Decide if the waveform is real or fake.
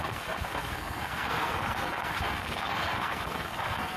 fake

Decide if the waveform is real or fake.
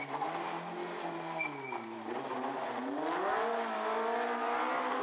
real